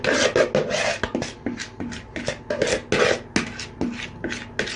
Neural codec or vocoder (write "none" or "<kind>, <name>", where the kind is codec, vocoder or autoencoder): none